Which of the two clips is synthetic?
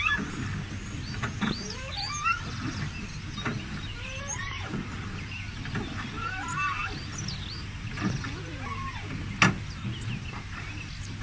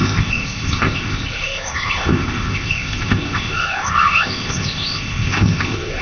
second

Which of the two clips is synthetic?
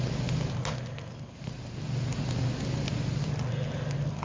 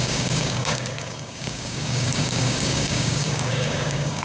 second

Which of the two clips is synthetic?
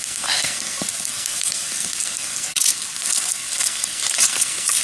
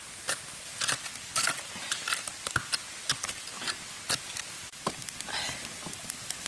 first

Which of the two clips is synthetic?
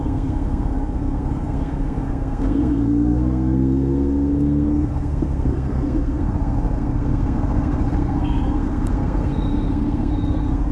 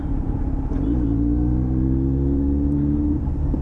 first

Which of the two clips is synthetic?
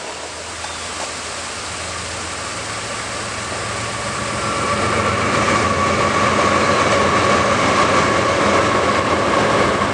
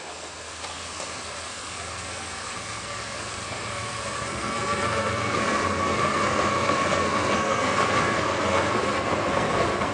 second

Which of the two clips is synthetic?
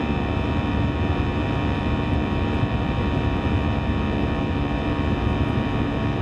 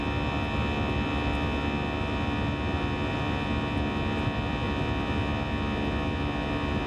first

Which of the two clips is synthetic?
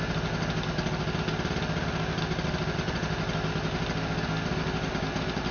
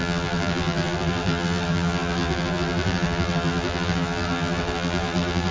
second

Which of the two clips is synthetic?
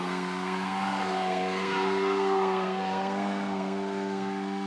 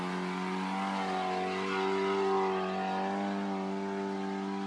first